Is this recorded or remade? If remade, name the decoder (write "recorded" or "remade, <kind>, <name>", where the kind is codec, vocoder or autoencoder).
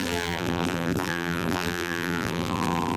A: remade, vocoder, BigVGAN v2